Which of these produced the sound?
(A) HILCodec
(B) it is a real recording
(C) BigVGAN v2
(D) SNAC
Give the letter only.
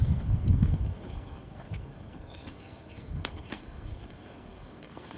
D